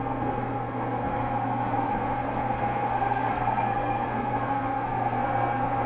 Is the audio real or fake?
fake